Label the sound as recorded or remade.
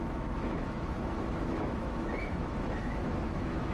remade